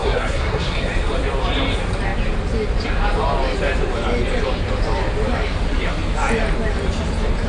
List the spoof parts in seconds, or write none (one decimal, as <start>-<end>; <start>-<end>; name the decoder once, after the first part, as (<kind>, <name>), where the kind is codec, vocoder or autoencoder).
0.0-0.9 (codec, SNAC)